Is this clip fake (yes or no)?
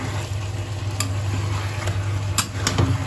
no